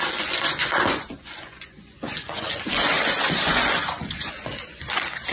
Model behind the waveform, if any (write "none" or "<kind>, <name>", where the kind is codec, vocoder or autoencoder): vocoder, Vocos